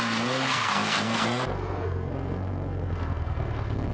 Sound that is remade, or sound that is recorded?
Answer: remade